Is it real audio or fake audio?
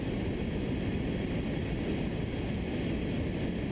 real